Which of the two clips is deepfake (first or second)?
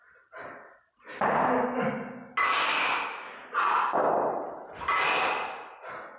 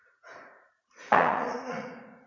second